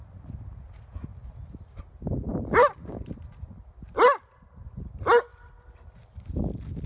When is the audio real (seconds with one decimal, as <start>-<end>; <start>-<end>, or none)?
0.0-6.9